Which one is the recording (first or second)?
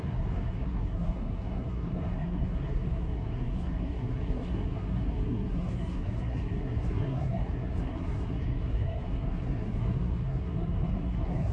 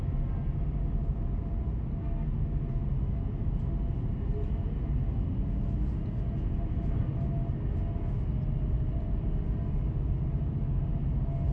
second